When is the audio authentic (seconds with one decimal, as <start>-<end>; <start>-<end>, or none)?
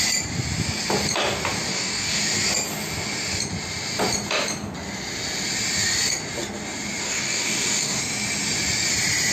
0.0-1.7; 2.2-7.0; 8.0-9.3